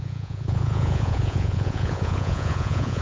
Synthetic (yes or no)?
yes